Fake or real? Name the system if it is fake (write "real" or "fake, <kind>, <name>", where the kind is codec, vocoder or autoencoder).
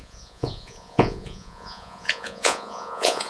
fake, vocoder, Vocos